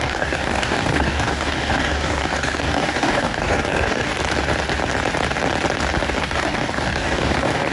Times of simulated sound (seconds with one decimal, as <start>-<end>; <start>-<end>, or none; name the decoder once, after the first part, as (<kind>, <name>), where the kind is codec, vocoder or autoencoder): 0.0-4.1 (codec, DAC); 6.2-7.7